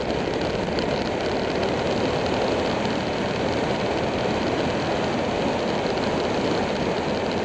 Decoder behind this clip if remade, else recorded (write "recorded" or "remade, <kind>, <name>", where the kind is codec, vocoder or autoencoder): recorded